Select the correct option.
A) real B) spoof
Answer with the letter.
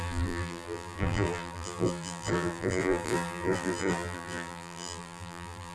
B